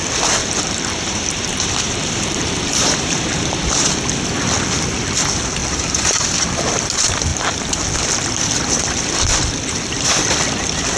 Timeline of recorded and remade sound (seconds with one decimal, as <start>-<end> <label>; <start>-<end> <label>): 0.0-0.4 recorded; 0.4-4.0 remade; 4.0-5.6 recorded; 5.6-6.2 remade; 6.2-7.3 recorded; 7.3-7.8 remade; 7.8-11.0 recorded